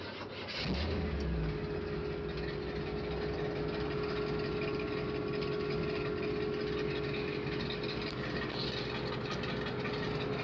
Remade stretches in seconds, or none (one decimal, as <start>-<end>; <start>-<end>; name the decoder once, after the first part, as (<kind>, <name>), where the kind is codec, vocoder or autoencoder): none